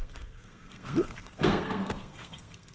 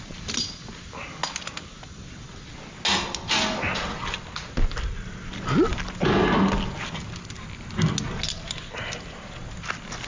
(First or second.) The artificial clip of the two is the first